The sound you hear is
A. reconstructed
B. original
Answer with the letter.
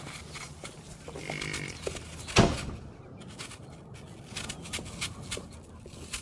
B